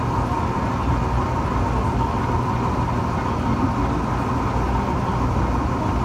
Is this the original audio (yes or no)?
yes